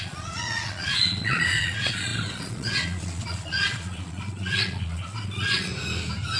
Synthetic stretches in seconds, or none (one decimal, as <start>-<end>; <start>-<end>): 0.0-5.7